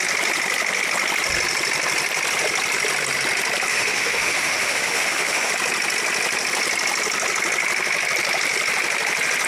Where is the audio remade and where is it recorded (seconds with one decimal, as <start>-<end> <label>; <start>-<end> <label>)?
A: 0.0-3.7 recorded; 3.7-5.5 remade; 5.5-9.5 recorded